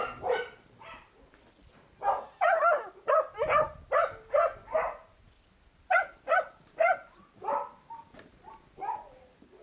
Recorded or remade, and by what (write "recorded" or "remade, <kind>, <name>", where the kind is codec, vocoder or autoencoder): recorded